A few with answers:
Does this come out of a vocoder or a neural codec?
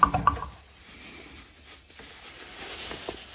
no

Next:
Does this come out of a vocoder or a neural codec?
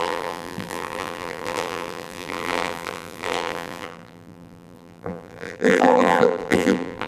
yes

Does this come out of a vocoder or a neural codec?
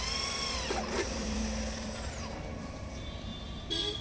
yes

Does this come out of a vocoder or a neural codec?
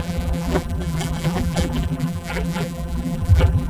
yes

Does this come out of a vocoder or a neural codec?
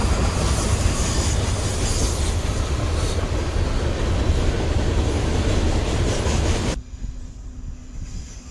no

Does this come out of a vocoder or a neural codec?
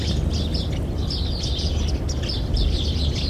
no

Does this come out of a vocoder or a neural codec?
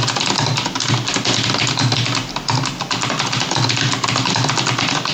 no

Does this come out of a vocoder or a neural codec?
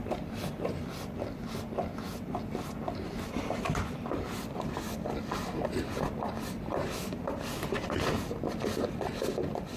no